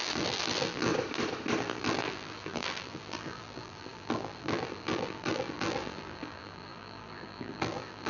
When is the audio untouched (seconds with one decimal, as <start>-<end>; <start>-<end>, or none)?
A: 0.9-1.6